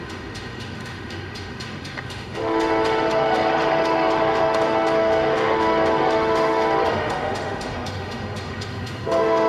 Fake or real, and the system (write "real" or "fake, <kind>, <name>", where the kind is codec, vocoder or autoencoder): fake, autoencoder, DAC-VAE